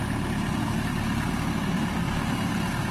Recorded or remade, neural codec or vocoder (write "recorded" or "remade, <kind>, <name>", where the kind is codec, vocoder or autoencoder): remade, vocoder, BigVGAN v2